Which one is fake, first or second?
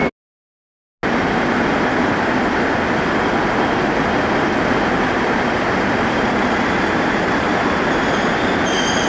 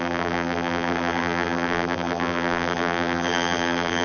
second